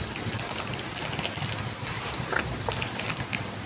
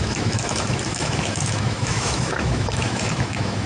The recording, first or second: first